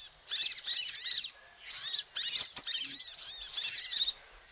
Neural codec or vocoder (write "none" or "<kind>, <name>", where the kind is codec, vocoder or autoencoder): none